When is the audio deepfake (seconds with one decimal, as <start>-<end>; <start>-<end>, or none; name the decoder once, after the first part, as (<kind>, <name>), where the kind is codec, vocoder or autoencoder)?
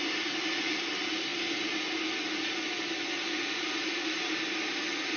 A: none